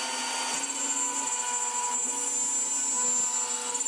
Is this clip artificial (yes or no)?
no